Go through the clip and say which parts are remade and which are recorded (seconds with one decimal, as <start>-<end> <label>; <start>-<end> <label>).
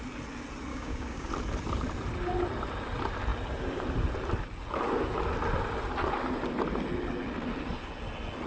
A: 0.0-0.7 recorded; 0.7-1.3 remade; 1.3-8.5 recorded